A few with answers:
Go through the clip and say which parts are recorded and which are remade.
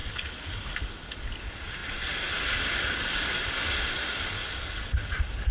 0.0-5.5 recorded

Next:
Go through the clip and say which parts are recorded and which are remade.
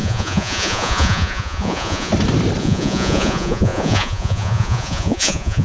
0.0-2.1 remade; 2.1-2.6 recorded; 2.6-5.6 remade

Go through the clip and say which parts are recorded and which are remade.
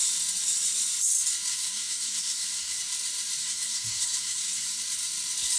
0.0-1.5 recorded; 1.5-2.8 remade; 2.8-3.4 recorded; 3.4-4.8 remade; 4.8-5.6 recorded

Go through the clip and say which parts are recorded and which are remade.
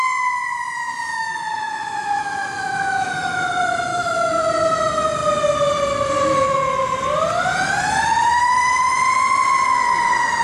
0.0-1.1 recorded; 1.1-3.1 remade; 3.1-3.9 recorded; 3.9-4.5 remade; 4.5-10.4 recorded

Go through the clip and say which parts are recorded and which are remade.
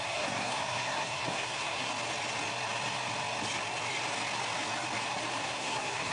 0.0-1.9 remade; 1.9-5.4 recorded; 5.4-6.1 remade